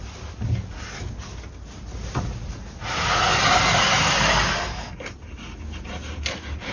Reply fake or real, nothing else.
real